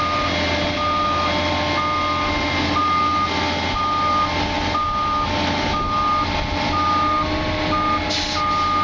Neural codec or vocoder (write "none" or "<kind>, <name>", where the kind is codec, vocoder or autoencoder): none